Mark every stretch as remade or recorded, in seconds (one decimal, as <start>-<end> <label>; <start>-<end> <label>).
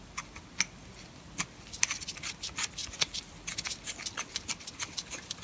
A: 0.0-5.4 recorded